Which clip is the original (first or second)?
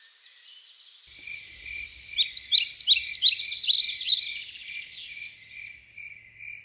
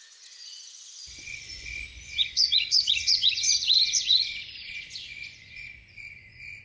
first